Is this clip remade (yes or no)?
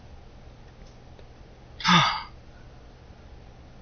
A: no